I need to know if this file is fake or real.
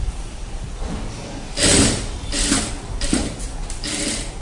fake